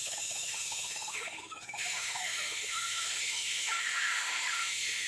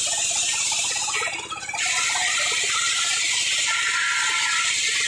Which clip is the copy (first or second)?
first